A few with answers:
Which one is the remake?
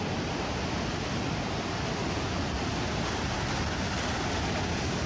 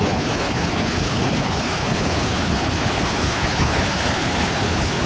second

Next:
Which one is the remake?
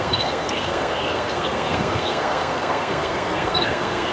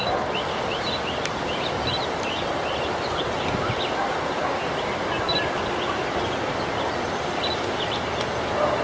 first